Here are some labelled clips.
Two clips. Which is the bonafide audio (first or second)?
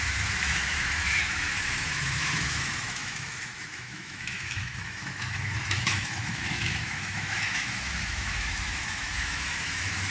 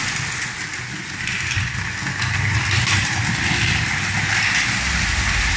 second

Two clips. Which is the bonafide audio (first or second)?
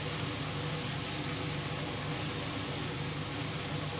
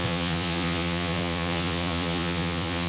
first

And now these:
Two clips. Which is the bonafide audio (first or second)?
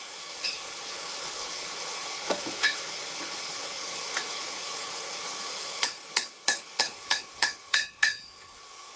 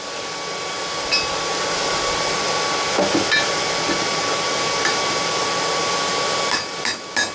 second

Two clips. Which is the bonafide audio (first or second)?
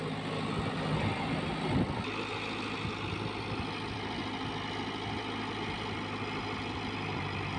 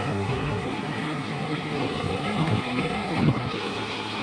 first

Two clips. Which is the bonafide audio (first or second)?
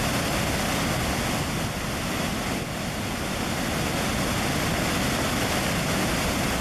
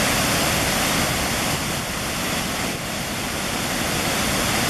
first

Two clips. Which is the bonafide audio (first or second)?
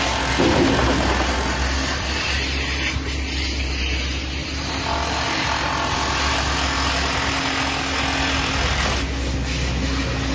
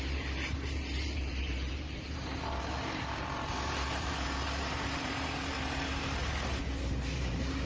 first